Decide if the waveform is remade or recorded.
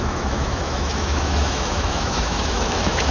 remade